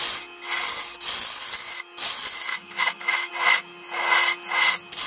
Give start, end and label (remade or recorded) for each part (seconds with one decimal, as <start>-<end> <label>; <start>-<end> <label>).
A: 0.0-2.5 recorded; 2.5-3.3 remade; 3.3-5.1 recorded